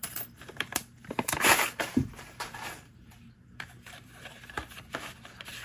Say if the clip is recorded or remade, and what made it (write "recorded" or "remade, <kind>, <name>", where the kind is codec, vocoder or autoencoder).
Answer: remade, vocoder, BigVGAN v2